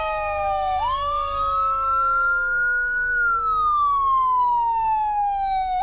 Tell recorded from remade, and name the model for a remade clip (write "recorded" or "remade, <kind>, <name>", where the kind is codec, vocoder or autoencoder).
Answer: remade, codec, DAC